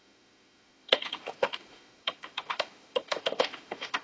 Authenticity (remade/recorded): remade